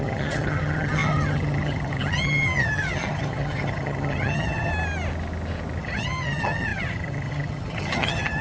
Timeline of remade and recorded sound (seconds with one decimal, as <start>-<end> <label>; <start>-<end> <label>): 0.0-4.7 remade; 4.7-5.8 recorded; 5.8-8.4 remade